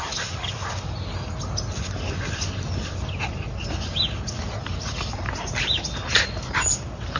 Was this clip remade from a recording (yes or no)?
no